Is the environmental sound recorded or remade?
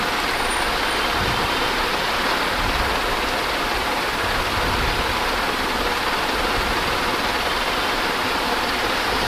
recorded